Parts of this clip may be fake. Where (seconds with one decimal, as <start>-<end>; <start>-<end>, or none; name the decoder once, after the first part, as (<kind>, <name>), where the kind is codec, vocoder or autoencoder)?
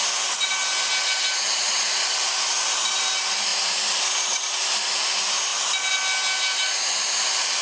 none